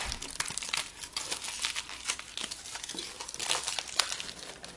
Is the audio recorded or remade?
recorded